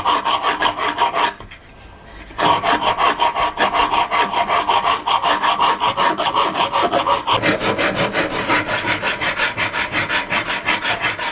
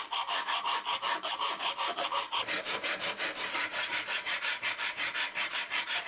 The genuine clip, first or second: first